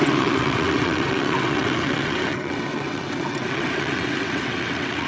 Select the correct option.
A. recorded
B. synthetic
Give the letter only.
B